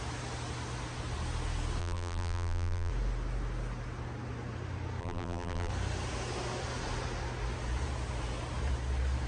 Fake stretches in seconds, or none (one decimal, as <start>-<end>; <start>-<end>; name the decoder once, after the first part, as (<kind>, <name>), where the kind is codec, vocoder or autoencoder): 1.8-2.9 (vocoder, BigVGAN v2); 5.0-5.7